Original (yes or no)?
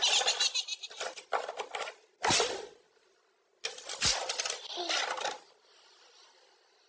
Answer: yes